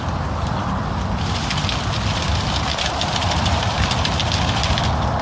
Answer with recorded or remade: recorded